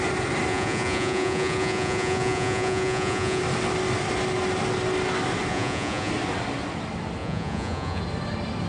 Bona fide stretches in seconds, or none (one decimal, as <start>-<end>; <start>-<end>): 0.0-0.5; 3.4-5.5; 6.1-7.2; 8.0-8.7

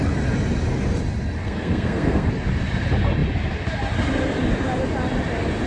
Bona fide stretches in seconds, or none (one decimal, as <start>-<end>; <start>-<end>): 0.0-1.4; 2.3-5.7

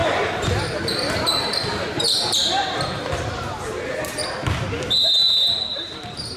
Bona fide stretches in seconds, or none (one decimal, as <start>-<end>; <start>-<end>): 4.2-5.5

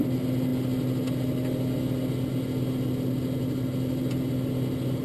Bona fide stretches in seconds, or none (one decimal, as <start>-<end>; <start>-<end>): 0.0-5.0

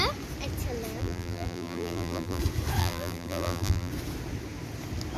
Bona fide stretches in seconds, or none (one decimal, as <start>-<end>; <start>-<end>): 0.0-1.0; 2.4-2.8; 3.9-5.2

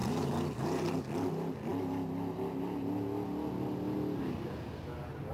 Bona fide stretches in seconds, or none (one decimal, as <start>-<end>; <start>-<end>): 1.0-5.3

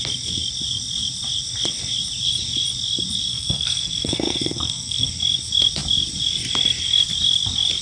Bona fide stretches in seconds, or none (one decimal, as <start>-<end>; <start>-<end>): 0.0-3.3; 5.1-7.8

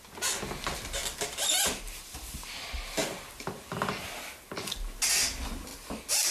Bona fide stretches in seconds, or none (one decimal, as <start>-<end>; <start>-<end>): 0.0-6.3